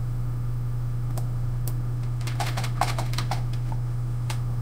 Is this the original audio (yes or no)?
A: no